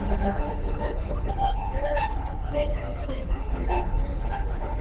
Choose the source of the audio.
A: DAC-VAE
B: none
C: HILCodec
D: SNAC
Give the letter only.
C